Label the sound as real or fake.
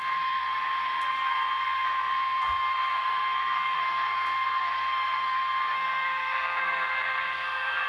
fake